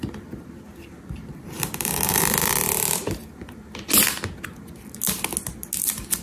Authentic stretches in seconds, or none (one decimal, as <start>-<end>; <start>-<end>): 0.0-0.7; 4.4-6.2